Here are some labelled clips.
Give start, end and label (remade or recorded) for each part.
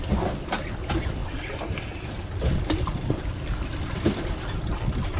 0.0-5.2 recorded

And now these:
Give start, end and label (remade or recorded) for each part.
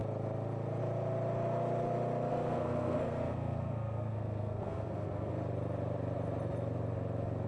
0.0-2.3 recorded; 2.3-5.3 remade; 5.3-7.5 recorded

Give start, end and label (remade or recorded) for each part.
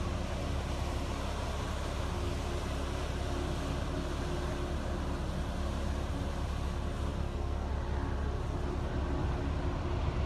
0.0-7.1 recorded; 7.1-7.7 remade; 7.7-10.3 recorded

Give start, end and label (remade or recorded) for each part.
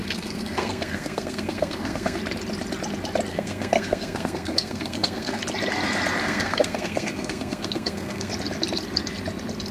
0.0-2.2 remade; 2.2-3.3 recorded; 3.3-5.4 remade; 5.4-6.2 recorded; 6.2-8.3 remade; 8.3-9.7 recorded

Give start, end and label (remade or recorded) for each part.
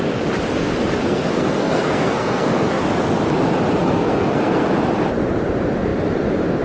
0.0-1.0 recorded; 1.0-2.8 remade; 2.8-3.8 recorded; 3.8-4.7 remade; 4.7-6.6 recorded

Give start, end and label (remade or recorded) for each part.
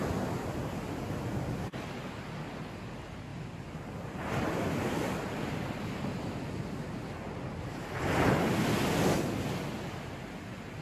0.0-10.8 recorded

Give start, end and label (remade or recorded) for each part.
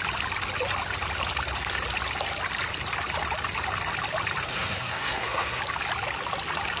0.0-4.5 recorded; 4.5-5.6 remade; 5.6-6.8 recorded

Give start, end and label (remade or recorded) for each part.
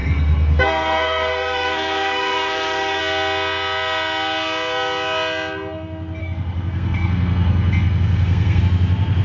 0.0-3.0 remade; 3.0-6.2 recorded; 6.2-8.6 remade; 8.6-9.2 recorded